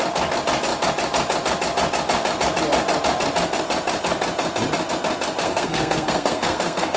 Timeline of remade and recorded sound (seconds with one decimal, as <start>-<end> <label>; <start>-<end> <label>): 0.0-5.4 recorded; 5.4-7.0 remade